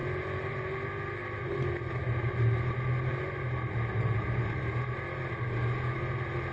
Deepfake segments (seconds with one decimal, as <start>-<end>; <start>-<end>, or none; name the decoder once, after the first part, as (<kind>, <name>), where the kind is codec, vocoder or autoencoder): none